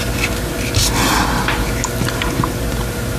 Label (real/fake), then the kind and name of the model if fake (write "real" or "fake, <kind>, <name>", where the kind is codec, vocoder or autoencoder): real